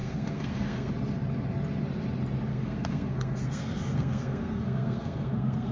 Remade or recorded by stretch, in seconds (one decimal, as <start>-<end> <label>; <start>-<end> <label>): 0.0-0.9 remade; 0.9-2.5 recorded; 2.5-5.7 remade